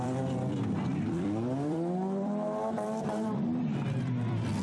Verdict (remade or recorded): remade